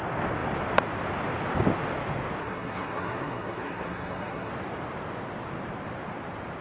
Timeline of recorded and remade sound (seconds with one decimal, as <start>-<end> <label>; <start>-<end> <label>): 0.0-2.4 recorded; 2.4-4.5 remade; 4.5-6.6 recorded